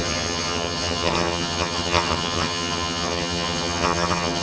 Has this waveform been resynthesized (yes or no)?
yes